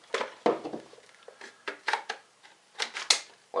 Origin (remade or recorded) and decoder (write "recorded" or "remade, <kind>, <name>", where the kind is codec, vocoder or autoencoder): recorded